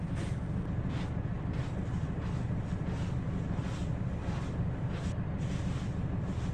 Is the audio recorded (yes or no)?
yes